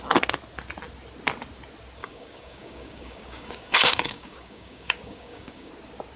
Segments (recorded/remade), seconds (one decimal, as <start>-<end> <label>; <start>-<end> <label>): 0.0-2.0 recorded; 2.0-5.7 remade; 5.7-6.2 recorded